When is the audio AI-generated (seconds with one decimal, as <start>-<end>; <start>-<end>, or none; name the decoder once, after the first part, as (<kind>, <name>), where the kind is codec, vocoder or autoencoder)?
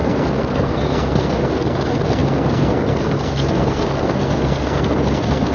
0.0-5.5 (codec, SNAC)